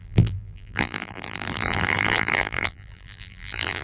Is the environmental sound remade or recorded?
remade